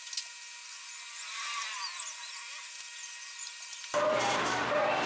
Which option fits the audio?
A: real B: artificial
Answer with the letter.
A